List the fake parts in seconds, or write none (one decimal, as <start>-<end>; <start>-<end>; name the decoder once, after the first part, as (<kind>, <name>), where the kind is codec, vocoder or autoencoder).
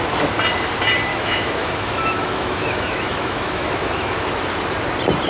1.1-4.3 (autoencoder, DAC-VAE)